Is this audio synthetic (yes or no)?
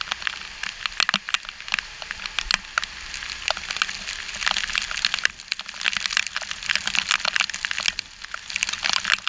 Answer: no